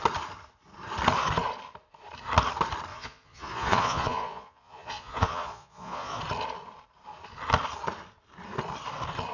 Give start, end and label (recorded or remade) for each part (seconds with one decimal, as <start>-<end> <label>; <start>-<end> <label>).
0.0-2.9 recorded; 2.9-6.2 remade; 6.2-9.3 recorded